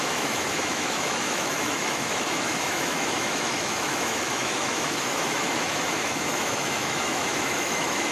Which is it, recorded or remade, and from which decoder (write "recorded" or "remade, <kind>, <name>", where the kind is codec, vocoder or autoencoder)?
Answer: remade, autoencoder, DAC-VAE